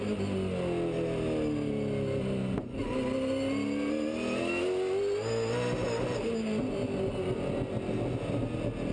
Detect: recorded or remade recorded